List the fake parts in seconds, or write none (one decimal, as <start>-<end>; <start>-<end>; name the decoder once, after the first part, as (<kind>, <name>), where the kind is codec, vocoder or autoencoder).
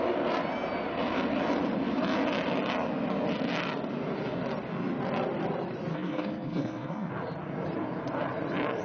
5.9-7.1 (codec, SNAC)